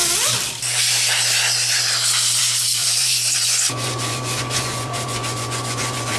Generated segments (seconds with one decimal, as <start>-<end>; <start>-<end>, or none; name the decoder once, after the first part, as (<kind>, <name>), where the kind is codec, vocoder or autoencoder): 2.8-6.2 (vocoder, Vocos)